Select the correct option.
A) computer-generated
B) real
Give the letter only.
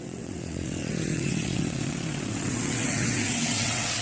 A